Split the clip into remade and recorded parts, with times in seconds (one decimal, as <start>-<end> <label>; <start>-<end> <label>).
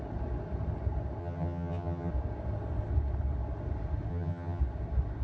0.0-1.2 recorded; 1.2-2.1 remade; 2.1-4.1 recorded; 4.1-4.6 remade; 4.6-5.2 recorded